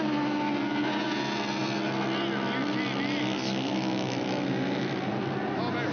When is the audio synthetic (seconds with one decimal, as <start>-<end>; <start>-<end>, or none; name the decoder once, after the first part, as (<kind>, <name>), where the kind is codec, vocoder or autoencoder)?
none

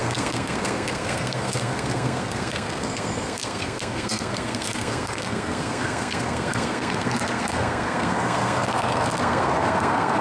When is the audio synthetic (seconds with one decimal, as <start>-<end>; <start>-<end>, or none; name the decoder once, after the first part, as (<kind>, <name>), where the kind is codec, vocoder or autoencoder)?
0.0-10.2 (codec, SNAC)

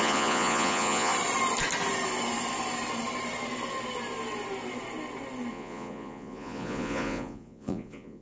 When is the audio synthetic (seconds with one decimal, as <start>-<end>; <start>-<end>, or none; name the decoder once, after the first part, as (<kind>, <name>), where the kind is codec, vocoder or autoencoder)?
0.0-1.1 (vocoder, Vocos); 5.5-8.2

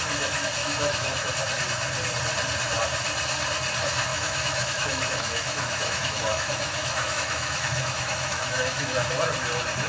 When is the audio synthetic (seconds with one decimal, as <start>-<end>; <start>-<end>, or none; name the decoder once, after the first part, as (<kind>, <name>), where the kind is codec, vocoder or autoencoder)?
0.6-1.3 (autoencoder, DAC-VAE); 4.1-9.1

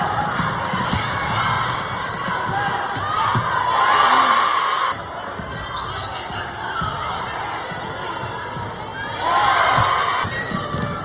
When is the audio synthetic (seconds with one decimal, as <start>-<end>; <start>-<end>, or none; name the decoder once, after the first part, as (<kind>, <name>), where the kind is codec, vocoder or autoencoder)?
none

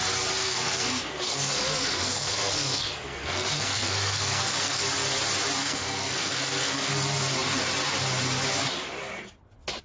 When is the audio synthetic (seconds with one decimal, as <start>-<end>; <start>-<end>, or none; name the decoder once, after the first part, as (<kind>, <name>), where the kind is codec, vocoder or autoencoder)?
0.4-4.8 (codec, SNAC); 5.6-6.9

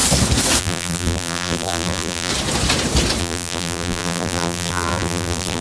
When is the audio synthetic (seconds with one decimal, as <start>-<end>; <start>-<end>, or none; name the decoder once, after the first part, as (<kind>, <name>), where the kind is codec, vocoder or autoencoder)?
0.6-2.3 (vocoder, BigVGAN v2); 3.2-5.6

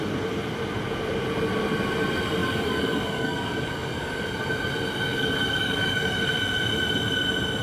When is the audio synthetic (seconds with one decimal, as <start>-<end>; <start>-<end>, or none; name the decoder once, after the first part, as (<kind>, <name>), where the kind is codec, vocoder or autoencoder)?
2.4-4.3 (codec, DAC); 5.1-6.3